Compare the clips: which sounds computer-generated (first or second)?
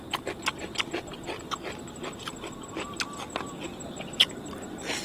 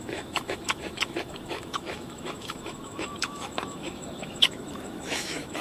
second